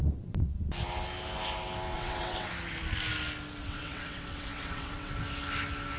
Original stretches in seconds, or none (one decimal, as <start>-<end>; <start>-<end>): 0.7-1.9; 2.5-3.6; 5.1-6.0